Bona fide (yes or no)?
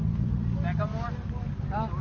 yes